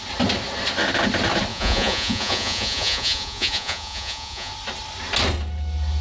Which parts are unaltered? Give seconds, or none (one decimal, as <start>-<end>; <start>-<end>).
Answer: 0.0-1.5; 4.5-6.0